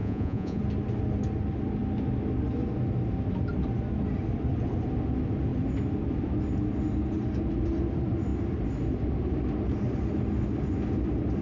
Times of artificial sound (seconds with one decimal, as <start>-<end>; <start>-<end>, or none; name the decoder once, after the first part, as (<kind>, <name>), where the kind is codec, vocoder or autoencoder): 0.0-0.6 (vocoder, Vocos)

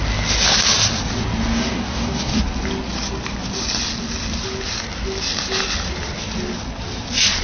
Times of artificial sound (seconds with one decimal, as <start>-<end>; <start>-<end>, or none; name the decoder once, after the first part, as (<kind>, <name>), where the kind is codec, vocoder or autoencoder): 1.5-2.4 (codec, DAC)

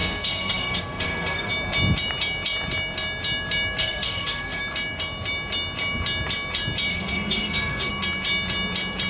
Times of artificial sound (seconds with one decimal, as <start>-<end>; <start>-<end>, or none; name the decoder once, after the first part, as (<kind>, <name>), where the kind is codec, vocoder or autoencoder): 0.0-1.5 (codec, SNAC); 3.8-4.6; 6.9-7.9

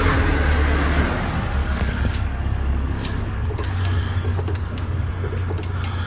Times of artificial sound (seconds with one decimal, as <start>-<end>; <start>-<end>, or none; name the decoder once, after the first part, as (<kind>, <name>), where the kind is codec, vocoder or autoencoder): 1.6-5.1 (codec, DAC)

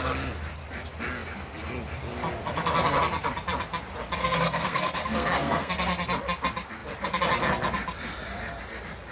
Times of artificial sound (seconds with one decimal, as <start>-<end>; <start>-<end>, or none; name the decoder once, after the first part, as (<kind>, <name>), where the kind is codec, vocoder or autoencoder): 4.2-5.7 (codec, SNAC)

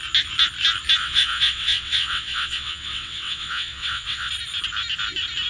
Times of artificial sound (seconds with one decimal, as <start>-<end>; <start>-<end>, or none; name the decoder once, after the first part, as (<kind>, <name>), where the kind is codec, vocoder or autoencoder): 1.0-4.3 (vocoder, WaveNeXt)